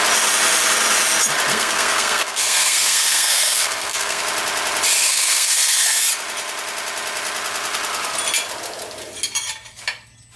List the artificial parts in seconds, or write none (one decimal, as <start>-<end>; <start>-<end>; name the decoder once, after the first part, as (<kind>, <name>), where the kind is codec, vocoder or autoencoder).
1.5-4.2 (codec, SNAC); 5.0-6.1